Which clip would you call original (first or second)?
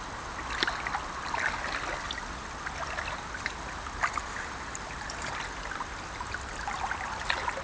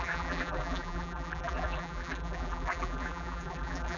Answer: first